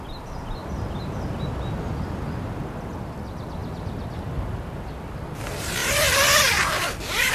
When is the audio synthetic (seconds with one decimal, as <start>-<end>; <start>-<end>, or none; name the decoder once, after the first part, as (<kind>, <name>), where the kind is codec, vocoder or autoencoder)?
5.8-7.3 (vocoder, BigVGAN v2)